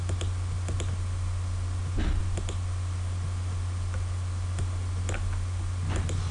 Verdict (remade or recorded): recorded